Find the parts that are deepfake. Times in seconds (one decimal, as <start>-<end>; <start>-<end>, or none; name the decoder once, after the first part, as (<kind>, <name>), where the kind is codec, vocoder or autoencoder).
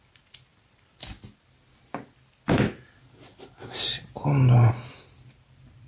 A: none